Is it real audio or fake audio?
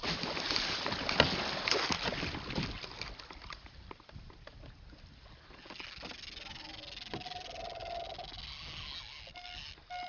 real